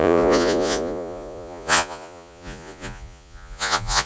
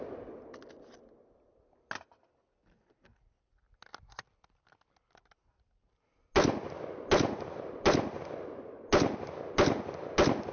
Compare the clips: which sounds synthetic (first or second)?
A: first